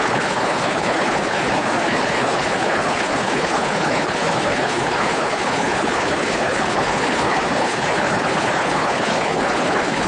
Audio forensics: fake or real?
fake